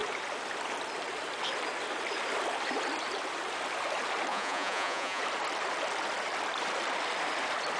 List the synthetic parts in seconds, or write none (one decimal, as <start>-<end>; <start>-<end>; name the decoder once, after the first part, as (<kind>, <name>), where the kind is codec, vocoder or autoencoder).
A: 4.3-5.2 (vocoder, Vocos)